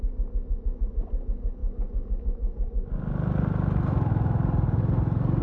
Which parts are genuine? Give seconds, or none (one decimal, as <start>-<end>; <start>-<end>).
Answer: 0.0-5.4